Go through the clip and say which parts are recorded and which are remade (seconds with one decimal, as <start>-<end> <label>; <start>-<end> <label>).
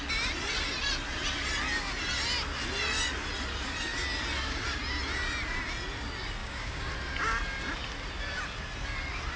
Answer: 0.0-6.4 recorded; 6.4-6.9 remade; 6.9-9.4 recorded